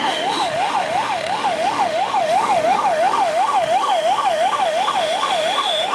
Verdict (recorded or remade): remade